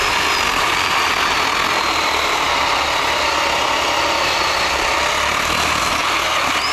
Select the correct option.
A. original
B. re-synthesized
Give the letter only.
A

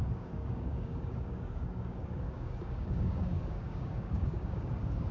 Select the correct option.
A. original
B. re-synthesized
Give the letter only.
B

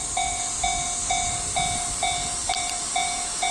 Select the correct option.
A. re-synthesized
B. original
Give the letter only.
B